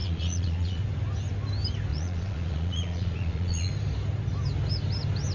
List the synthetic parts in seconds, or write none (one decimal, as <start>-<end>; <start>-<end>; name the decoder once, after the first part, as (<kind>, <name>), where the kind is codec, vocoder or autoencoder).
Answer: 0.0-0.8 (vocoder, Vocos); 1.9-3.7